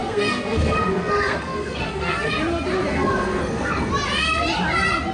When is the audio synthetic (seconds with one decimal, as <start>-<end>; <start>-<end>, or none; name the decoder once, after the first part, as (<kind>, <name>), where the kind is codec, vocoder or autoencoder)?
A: 0.0-2.3 (codec, SNAC); 2.9-3.9